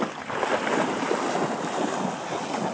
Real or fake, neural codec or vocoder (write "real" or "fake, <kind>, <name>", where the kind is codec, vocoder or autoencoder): real